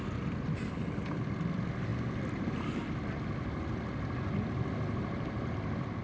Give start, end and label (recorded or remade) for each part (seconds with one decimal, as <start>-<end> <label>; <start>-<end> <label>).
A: 0.0-6.0 recorded